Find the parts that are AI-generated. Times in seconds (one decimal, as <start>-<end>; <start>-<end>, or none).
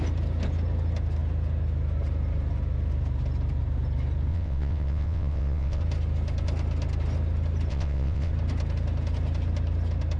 4.3-5.8; 7.7-8.3